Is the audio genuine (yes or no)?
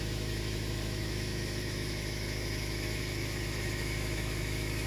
no